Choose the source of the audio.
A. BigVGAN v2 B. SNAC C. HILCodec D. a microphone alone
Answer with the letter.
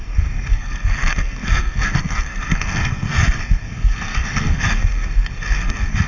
B